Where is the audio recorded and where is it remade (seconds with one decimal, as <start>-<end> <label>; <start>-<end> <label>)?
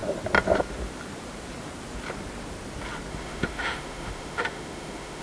0.0-3.1 recorded; 3.1-5.2 remade